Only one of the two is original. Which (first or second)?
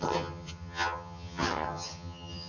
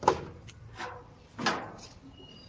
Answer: second